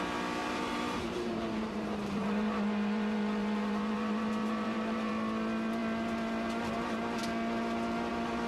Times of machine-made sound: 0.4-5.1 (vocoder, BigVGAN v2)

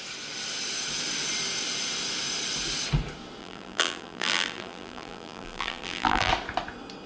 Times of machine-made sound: 3.4-6.3 (vocoder, BigVGAN v2)

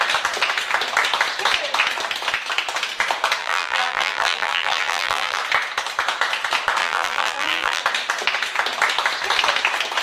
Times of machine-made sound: 3.4-5.4 (vocoder, BigVGAN v2); 6.8-7.8

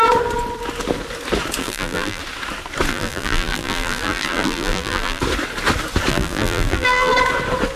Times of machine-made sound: 1.6-2.2 (vocoder, BigVGAN v2); 2.9-5.2; 6.1-7.1

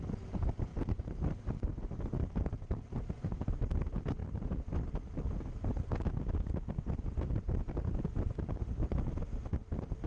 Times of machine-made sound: 0.0-0.7 (vocoder, BigVGAN v2); 3.5-4.2; 5.4-10.1

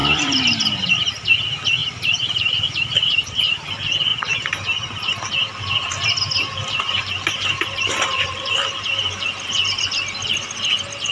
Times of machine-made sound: 0.0-1.0 (vocoder, BigVGAN v2); 1.8-3.4; 4.1-5.1; 6.6-9.1